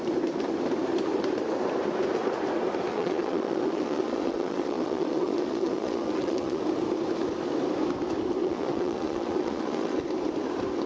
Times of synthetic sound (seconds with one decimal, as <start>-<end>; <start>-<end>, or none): 2.9-6.6; 8.4-10.0